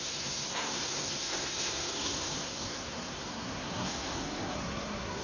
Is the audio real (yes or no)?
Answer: no